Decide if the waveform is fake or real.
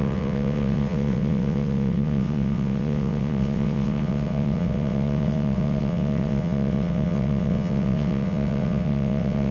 fake